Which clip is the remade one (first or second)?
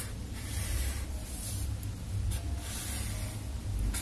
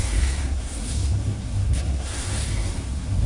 second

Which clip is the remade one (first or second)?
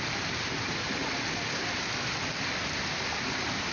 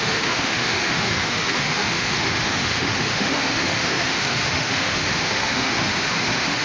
second